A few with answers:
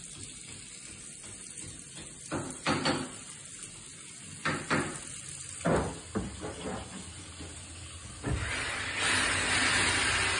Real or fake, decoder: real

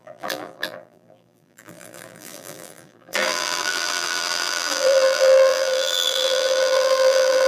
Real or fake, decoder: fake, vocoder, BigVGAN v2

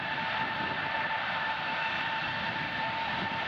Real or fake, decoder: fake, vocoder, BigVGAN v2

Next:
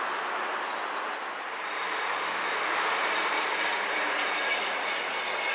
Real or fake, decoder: real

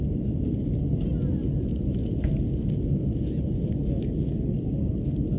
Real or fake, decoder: real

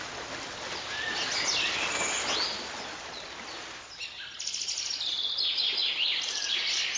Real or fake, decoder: real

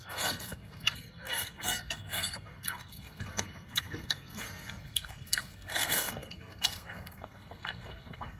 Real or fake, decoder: fake, codec, SNAC